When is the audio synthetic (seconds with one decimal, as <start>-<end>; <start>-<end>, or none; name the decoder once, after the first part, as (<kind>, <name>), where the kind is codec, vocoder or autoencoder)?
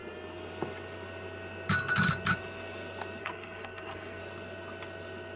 3.2-4.2 (codec, SNAC)